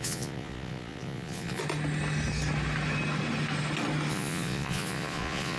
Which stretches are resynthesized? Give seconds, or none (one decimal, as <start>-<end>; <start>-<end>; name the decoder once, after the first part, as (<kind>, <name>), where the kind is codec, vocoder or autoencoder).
0.0-1.6 (vocoder, Vocos); 4.1-5.6